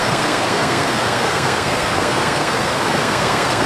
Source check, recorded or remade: remade